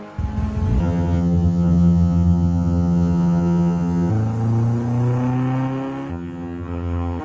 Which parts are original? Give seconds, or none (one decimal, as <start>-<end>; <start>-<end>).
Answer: 0.0-0.8; 4.1-6.1